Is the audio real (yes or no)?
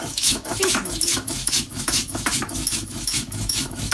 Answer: no